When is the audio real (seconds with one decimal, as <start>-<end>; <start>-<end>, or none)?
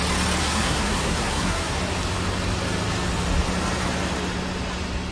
0.0-0.4; 1.8-5.1